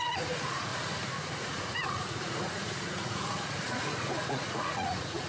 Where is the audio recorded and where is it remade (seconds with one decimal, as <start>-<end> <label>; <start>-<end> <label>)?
0.0-0.7 remade; 0.7-1.3 recorded; 1.3-5.3 remade